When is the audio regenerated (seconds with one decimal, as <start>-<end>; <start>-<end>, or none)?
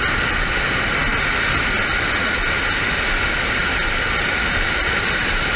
none